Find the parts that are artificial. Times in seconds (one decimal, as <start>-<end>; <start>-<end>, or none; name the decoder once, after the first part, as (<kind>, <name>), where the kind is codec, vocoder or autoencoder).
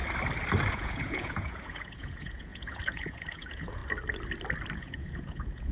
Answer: 0.7-3.8 (vocoder, Vocos); 4.8-5.7